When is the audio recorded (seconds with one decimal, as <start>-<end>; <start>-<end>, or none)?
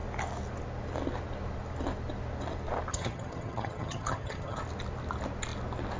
0.0-2.9; 4.6-6.0